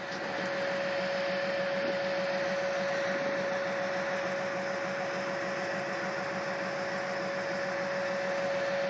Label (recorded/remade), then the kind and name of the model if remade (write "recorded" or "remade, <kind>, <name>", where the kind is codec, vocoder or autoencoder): recorded